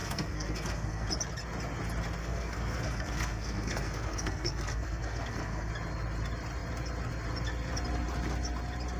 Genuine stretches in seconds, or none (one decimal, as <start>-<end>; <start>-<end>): 1.1-2.2; 5.7-9.0